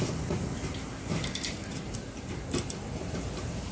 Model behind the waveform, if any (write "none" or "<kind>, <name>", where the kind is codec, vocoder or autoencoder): none